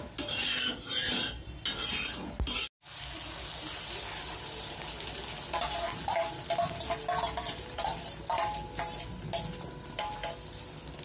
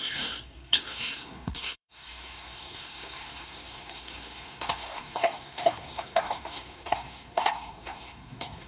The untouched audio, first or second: first